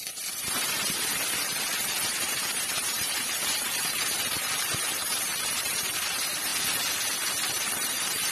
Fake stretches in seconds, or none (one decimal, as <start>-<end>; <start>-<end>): 0.0-6.5; 7.7-8.3